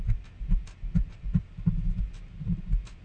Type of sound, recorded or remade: recorded